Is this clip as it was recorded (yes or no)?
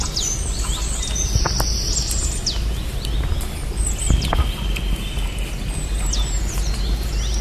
yes